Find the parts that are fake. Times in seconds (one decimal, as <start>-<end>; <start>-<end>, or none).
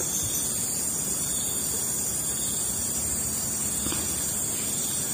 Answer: none